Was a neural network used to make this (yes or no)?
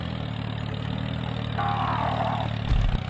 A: no